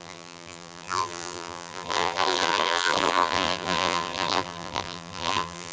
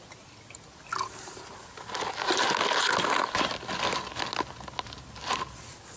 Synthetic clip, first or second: first